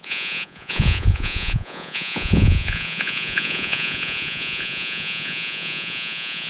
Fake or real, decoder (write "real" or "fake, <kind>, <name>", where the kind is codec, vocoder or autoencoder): fake, vocoder, Vocos